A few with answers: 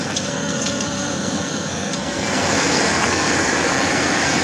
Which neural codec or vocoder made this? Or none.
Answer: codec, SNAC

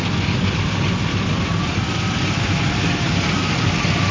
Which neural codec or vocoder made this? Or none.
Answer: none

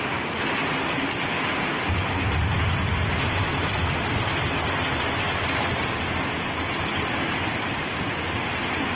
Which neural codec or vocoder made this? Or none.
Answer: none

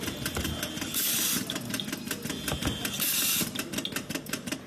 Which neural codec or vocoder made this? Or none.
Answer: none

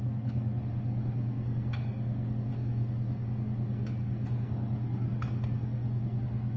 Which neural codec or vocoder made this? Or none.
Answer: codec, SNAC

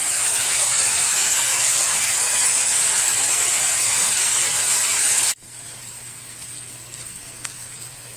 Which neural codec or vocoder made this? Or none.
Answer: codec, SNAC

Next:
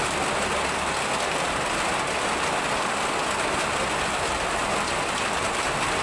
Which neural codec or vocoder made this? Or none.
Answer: none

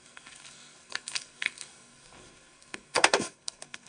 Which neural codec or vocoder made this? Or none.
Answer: codec, SNAC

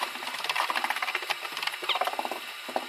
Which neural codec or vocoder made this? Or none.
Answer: none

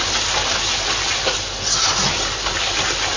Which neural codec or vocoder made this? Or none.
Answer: none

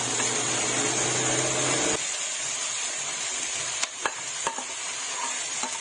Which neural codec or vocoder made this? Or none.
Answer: none